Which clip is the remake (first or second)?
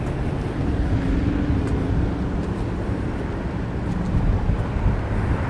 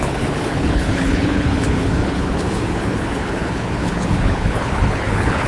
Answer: second